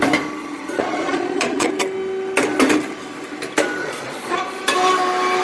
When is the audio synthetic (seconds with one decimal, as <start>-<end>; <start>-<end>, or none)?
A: 0.4-1.7; 3.8-4.6